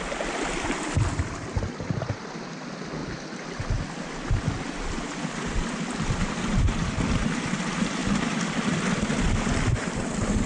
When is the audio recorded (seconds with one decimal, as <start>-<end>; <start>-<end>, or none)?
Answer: 0.0-10.5